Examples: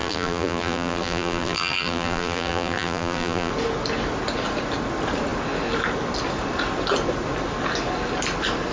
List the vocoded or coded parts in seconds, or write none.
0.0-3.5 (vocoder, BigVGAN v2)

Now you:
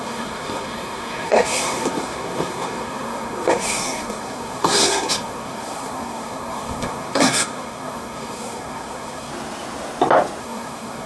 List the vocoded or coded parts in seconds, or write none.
0.0-9.3 (codec, SNAC); 10.4-11.1

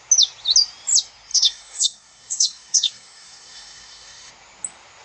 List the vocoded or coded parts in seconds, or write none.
1.3-4.3 (codec, SNAC)